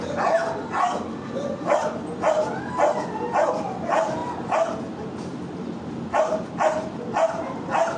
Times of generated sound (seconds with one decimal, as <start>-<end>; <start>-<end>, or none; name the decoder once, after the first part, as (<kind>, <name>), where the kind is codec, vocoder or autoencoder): none